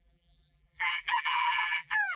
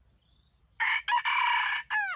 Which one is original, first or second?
second